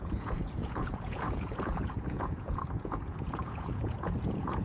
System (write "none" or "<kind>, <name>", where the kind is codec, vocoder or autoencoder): vocoder, Vocos